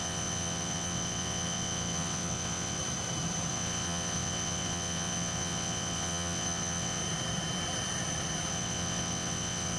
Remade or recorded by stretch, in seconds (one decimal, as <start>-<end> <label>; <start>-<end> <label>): 0.0-2.8 remade; 2.8-3.5 recorded; 3.5-7.0 remade; 7.0-8.5 recorded; 8.5-9.8 remade